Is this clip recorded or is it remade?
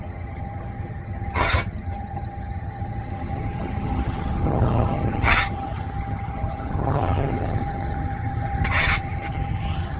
remade